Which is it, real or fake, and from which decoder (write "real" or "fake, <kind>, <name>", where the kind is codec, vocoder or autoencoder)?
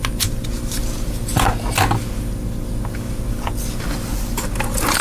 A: real